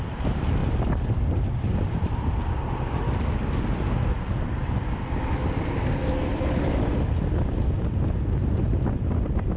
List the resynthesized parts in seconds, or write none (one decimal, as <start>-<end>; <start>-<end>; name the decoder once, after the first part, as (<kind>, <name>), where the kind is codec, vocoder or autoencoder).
0.6-2.4 (vocoder, BigVGAN v2); 6.3-7.6